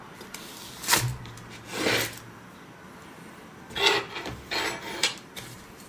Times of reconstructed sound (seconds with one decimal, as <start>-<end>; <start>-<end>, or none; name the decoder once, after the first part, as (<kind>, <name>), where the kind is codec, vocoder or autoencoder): 5.0-5.9 (vocoder, BigVGAN v2)